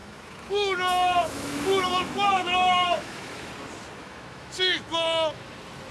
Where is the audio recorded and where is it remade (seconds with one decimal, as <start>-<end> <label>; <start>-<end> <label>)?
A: 0.0-3.5 remade; 3.5-4.0 recorded; 4.0-5.4 remade; 5.4-5.9 recorded